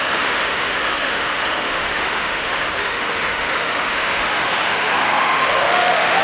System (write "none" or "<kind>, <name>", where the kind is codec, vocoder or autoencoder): autoencoder, DAC-VAE